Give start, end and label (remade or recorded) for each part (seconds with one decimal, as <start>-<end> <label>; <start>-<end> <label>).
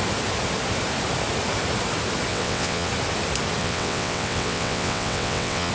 0.0-2.3 recorded; 2.3-2.9 remade; 2.9-3.6 recorded; 3.6-5.7 remade